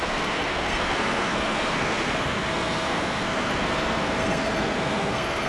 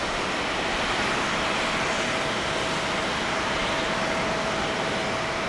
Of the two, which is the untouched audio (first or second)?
second